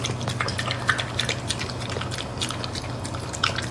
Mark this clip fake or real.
real